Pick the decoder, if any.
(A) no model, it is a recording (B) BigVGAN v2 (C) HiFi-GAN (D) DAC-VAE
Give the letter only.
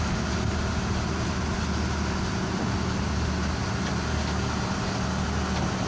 A